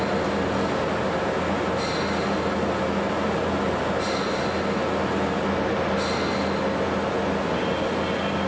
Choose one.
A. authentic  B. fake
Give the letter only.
A